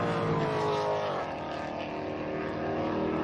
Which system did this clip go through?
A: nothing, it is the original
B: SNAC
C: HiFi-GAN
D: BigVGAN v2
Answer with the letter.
A